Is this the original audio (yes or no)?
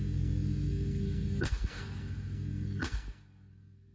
no